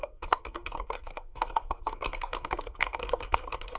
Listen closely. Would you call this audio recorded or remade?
remade